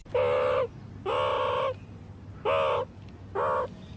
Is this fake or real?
real